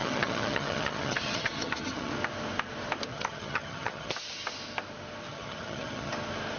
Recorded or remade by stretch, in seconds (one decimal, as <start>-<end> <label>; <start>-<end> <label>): 0.0-2.1 remade; 2.1-3.1 recorded; 3.1-4.1 remade; 4.1-5.3 recorded; 5.3-6.1 remade; 6.1-6.6 recorded